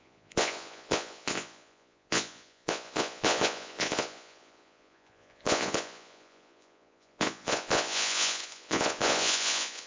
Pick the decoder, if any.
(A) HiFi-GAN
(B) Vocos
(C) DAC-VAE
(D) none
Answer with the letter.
B